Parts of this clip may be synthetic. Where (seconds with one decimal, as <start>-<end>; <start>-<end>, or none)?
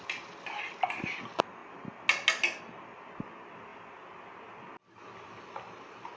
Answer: none